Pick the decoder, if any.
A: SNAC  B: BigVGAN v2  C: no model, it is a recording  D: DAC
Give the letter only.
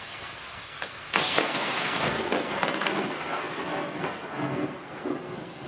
A